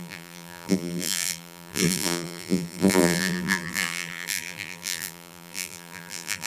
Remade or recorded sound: remade